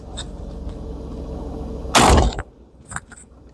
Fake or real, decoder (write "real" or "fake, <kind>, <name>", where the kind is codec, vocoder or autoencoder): real